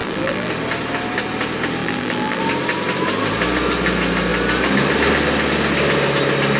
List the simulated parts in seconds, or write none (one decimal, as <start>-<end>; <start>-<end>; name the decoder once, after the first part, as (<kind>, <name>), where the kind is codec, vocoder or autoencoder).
0.0-0.5 (vocoder, BigVGAN v2); 1.8-2.4